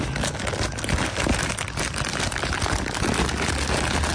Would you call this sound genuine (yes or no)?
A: yes